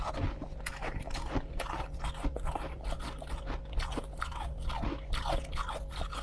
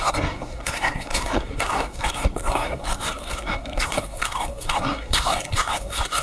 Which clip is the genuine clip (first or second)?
first